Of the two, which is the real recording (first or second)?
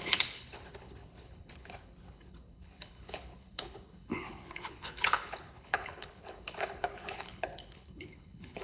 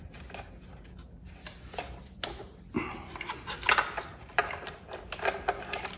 second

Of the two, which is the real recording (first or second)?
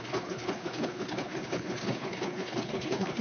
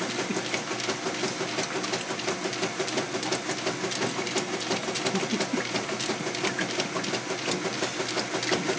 second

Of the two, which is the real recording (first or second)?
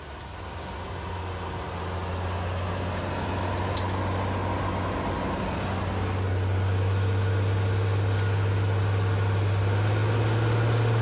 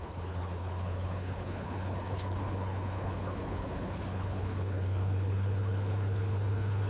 first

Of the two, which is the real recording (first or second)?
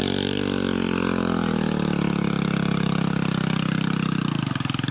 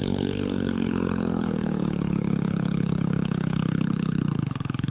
first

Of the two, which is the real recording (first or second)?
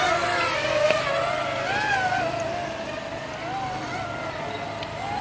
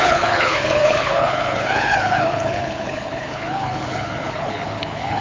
first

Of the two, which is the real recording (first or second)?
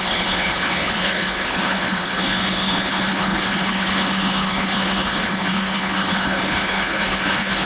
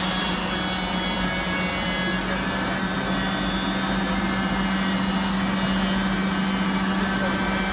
second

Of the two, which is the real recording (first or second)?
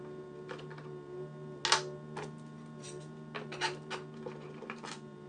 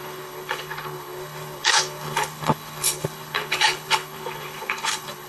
first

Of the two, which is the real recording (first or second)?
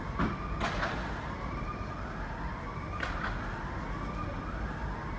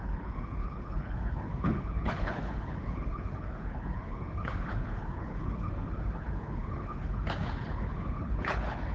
first